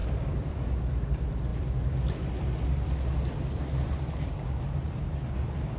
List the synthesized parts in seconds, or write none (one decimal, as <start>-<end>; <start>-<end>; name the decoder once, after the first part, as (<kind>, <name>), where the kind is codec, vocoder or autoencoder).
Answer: 0.0-0.6 (vocoder, BigVGAN v2); 1.5-5.0